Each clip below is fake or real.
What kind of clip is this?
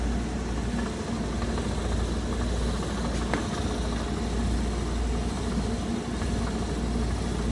real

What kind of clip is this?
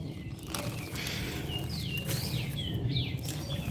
real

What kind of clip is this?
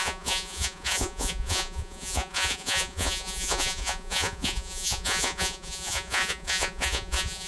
fake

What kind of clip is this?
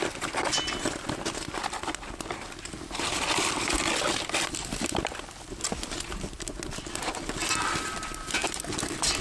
real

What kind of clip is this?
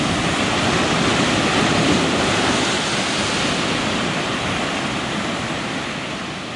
real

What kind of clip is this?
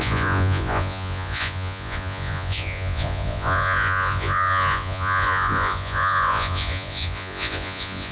fake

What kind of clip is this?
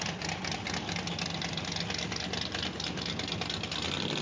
real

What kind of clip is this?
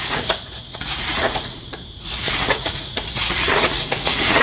fake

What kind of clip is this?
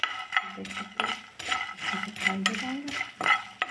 real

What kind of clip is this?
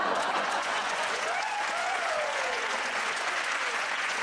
fake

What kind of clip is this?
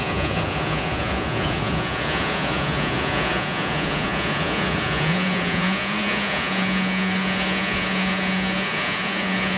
fake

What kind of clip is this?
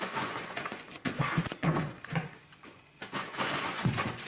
fake